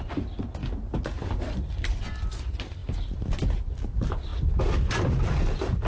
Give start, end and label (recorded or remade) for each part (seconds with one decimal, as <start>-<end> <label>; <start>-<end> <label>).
0.0-5.9 recorded

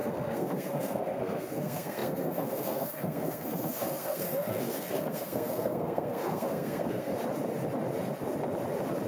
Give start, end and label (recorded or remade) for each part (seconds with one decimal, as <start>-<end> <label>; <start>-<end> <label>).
0.0-7.1 remade; 7.1-9.1 recorded

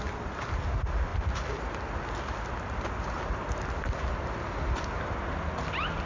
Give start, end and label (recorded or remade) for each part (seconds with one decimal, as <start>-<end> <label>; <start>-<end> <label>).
0.0-6.1 recorded

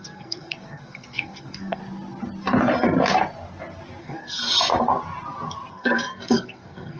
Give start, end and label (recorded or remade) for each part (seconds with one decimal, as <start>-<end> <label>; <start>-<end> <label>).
0.0-1.8 remade; 1.8-4.0 recorded; 4.0-4.4 remade; 4.4-5.7 recorded; 5.7-7.0 remade

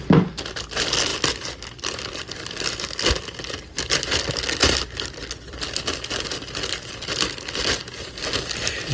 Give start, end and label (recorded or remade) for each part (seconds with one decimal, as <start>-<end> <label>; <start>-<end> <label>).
0.0-8.9 recorded

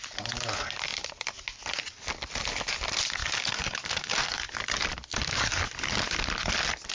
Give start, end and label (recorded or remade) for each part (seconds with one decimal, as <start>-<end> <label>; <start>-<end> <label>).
0.0-3.2 recorded; 3.2-4.6 remade; 4.6-6.9 recorded

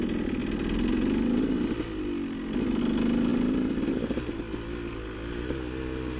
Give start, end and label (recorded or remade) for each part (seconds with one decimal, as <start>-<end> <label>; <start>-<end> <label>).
0.0-6.2 recorded